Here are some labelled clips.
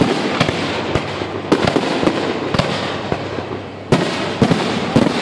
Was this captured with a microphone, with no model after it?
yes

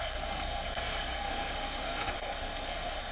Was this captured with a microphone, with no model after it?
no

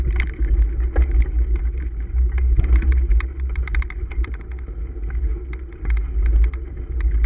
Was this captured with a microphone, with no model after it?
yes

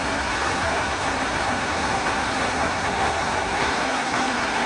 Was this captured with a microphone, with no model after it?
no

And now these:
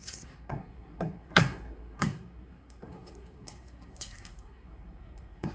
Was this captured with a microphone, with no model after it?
no